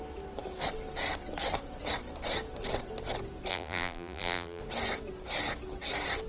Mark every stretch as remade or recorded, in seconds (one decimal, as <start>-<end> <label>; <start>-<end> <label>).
0.0-3.5 recorded; 3.5-4.6 remade; 4.6-6.3 recorded